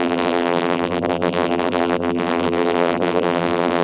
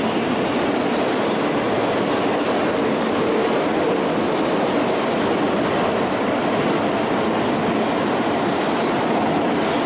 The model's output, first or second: first